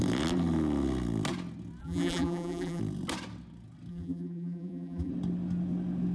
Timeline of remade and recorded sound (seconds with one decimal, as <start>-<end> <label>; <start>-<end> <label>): 0.0-1.8 recorded; 1.8-2.8 remade; 2.8-3.9 recorded; 3.9-5.1 remade; 5.1-6.1 recorded